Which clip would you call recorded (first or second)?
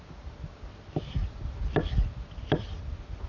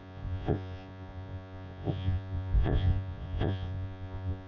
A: first